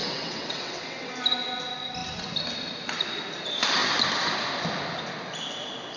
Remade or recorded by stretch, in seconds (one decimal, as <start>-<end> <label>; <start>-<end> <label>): 0.0-1.1 remade; 1.1-6.0 recorded